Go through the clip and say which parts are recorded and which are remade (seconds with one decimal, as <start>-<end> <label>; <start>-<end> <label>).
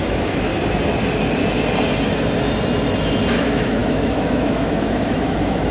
0.0-0.5 remade; 0.5-3.3 recorded; 3.3-5.7 remade